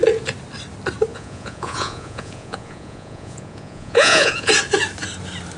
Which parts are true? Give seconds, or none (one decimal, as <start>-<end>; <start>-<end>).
0.0-1.1; 4.5-5.6